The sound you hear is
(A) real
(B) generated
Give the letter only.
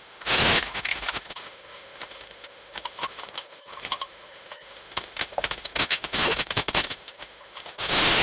B